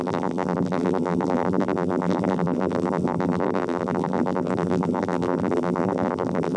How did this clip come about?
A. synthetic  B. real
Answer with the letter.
A